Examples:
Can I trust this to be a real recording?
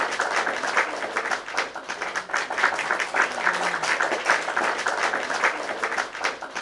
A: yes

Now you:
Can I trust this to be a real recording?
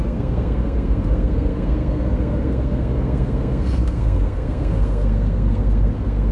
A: no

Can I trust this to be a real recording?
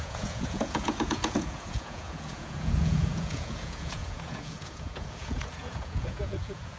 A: no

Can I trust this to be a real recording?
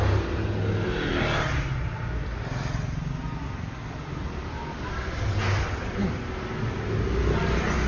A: yes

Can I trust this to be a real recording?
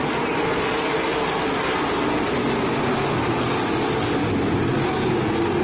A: yes